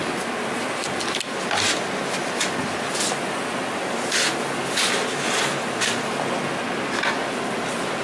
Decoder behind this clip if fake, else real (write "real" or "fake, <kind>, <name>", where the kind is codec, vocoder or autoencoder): real